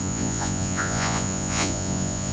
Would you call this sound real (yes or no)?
no